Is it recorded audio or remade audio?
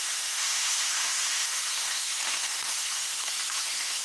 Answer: remade